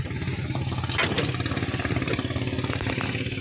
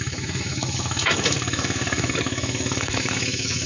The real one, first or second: first